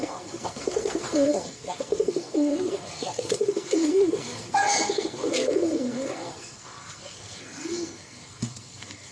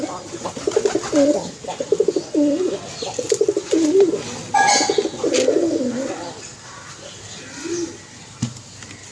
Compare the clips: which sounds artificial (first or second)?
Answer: first